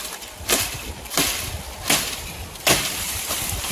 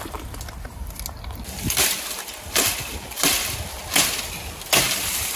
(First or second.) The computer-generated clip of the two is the first